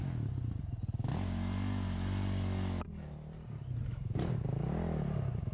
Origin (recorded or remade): recorded